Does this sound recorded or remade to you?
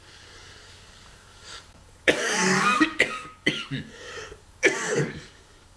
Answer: remade